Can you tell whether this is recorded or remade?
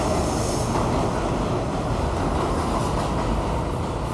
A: recorded